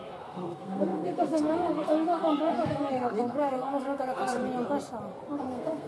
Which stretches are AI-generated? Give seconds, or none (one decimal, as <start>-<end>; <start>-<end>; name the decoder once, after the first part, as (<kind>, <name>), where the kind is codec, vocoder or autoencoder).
0.0-4.4 (codec, SNAC); 5.4-5.9